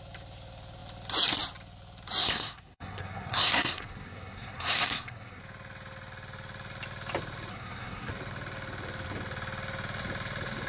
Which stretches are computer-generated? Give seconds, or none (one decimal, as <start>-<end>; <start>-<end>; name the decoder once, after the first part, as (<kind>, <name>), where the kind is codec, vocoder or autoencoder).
2.2-5.4 (codec, SNAC); 7.5-8.1